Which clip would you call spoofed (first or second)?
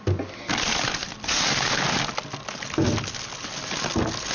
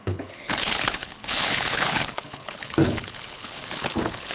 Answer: second